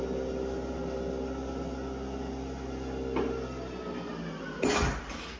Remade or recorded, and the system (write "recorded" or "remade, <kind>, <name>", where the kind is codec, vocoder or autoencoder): recorded